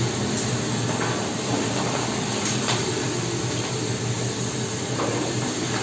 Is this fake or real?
real